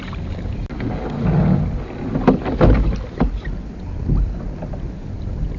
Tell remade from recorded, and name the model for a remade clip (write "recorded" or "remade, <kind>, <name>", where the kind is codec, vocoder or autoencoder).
recorded